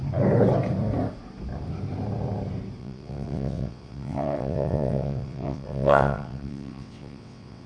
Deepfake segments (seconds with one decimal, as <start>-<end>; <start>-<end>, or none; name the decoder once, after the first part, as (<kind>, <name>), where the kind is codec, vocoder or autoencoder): 2.8-7.7 (vocoder, WaveNeXt)